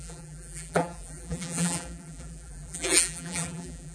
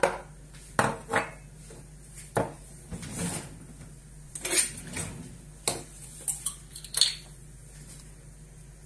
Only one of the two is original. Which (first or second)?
second